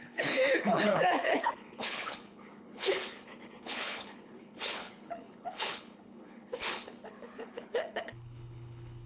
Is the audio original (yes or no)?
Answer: no